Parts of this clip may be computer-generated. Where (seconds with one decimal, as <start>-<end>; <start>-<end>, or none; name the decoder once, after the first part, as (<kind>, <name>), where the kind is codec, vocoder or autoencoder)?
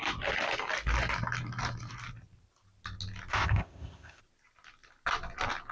3.3-4.2 (codec, ZipCodec)